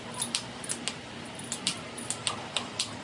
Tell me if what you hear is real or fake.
real